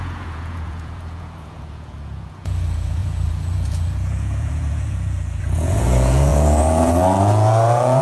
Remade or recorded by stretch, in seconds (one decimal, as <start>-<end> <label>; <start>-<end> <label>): 0.0-8.0 remade